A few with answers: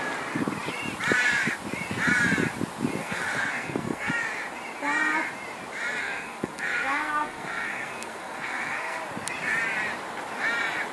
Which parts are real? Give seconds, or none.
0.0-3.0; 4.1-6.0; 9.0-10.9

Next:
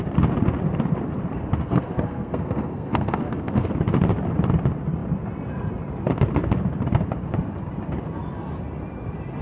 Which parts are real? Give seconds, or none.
0.0-1.6; 3.7-9.4

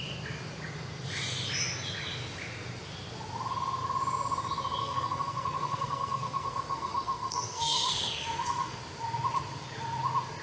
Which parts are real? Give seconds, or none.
0.0-4.8; 8.8-10.4

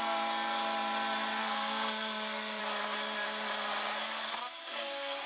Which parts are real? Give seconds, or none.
0.0-1.4; 2.6-4.6

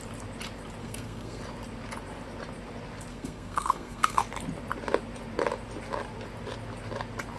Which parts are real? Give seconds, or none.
0.0-0.8; 1.4-3.1; 4.2-7.4

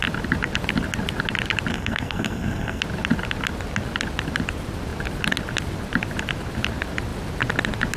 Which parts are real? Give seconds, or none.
0.0-1.7; 2.8-8.0

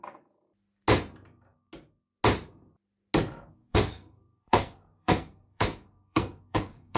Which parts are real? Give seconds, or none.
0.0-3.6